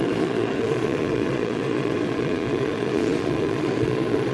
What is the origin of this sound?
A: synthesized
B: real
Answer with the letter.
A